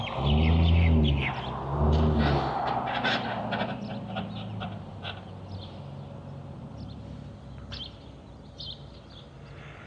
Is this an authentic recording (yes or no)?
yes